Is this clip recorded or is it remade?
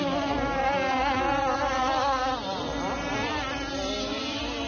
recorded